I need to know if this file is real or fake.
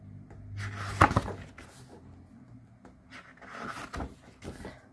real